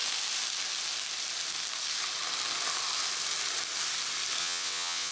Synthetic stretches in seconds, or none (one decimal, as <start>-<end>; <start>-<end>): 4.4-5.1